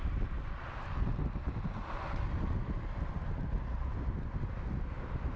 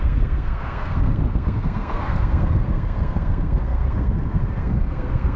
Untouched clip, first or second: first